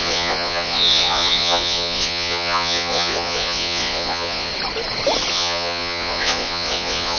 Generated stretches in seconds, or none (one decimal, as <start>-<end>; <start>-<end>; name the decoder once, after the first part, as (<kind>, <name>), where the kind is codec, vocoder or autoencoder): 0.0-4.5 (vocoder, Vocos); 5.3-7.2